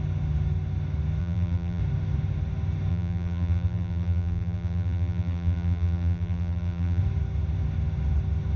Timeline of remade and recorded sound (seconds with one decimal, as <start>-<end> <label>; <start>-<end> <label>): 0.0-1.2 recorded; 1.2-1.8 remade; 1.8-2.9 recorded; 2.9-7.0 remade; 7.0-8.6 recorded